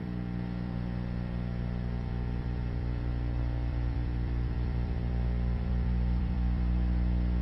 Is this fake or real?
fake